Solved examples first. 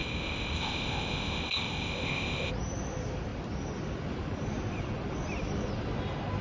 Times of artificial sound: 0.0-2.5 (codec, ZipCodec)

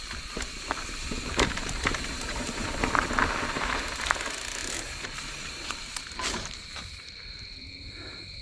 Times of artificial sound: 0.0-2.6 (vocoder, BigVGAN v2); 3.4-8.4

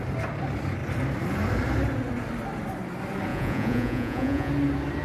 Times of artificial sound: 3.3-4.5 (vocoder, Vocos)

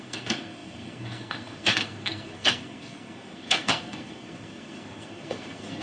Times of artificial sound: 0.0-5.8 (codec, SNAC)

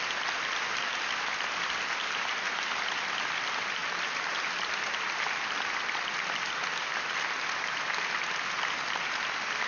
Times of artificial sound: none

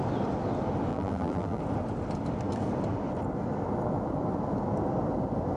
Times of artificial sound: 0.9-1.6 (vocoder, BigVGAN v2)

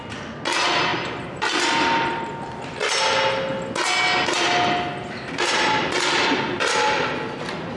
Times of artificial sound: none

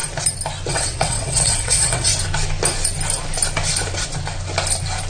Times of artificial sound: 0.7-2.1 (vocoder, WaveNeXt)